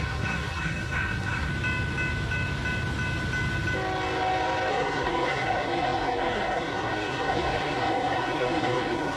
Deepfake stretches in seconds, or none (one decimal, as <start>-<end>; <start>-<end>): 0.0-1.5; 4.7-9.2